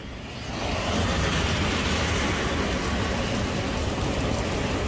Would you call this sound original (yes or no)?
yes